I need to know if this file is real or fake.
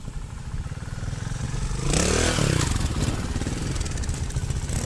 real